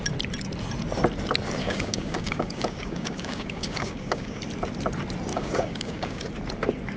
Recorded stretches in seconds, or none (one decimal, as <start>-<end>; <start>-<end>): 0.0-1.6; 4.4-5.3; 6.3-7.0